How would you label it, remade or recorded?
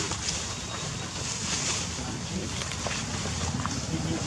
recorded